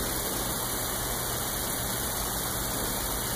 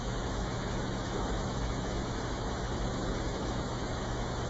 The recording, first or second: first